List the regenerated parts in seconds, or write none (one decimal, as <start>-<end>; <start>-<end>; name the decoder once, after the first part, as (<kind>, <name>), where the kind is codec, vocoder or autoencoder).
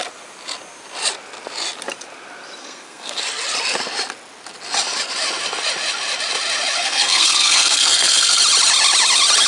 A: 2.6-3.2 (codec, SNAC); 6.8-8.4